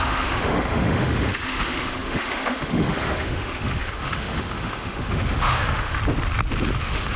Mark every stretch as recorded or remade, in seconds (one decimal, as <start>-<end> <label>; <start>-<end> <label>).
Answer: 0.0-6.0 remade; 6.0-6.8 recorded; 6.8-7.2 remade